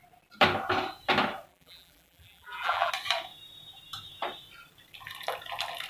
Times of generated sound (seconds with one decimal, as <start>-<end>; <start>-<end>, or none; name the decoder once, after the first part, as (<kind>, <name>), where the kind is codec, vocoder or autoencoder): 1.5-2.9 (vocoder, BigVGAN v2)